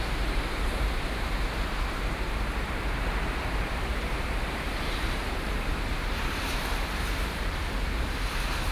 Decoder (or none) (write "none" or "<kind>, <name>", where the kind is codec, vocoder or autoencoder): vocoder, BigVGAN v2